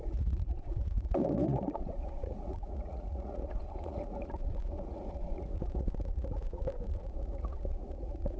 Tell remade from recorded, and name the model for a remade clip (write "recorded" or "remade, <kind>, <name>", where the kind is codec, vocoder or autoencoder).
remade, vocoder, Vocos